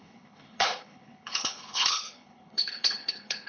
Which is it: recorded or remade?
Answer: remade